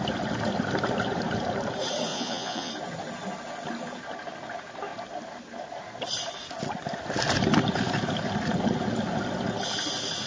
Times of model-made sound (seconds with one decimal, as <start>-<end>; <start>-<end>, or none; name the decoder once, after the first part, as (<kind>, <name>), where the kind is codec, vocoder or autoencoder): 2.1-2.7 (vocoder, Vocos)